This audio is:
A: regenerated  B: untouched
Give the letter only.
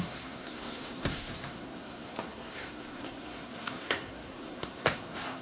A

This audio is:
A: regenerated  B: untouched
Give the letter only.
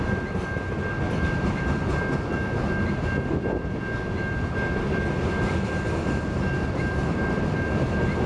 B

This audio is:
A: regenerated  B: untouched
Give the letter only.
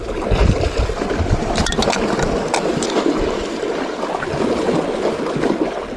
B